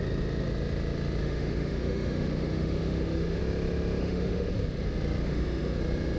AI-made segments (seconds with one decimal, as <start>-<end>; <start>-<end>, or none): 1.2-3.4; 4.0-4.5; 5.2-5.8